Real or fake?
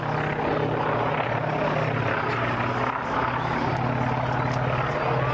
real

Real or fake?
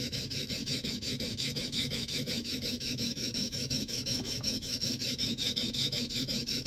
fake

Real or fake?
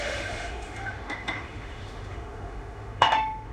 fake